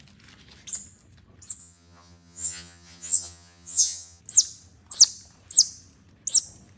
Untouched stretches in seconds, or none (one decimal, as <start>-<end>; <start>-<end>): 0.0-1.6; 4.2-6.8